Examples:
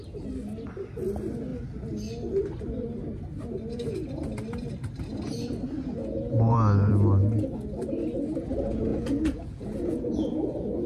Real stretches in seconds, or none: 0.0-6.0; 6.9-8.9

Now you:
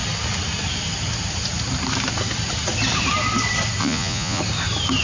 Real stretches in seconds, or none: 0.0-3.8; 4.4-5.0

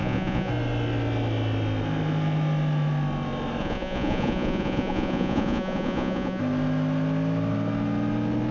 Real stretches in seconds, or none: 0.5-3.6; 6.4-8.5

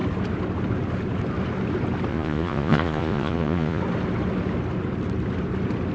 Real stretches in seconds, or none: 0.0-2.1; 3.8-5.9

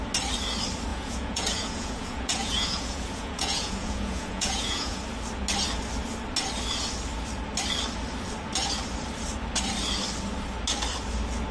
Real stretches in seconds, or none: 0.0-0.9; 5.0-11.5

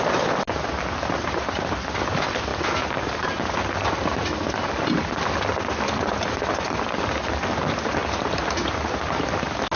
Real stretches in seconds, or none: 0.0-9.8